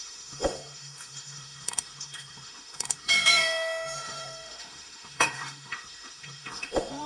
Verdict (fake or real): fake